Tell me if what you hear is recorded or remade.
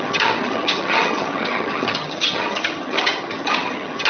remade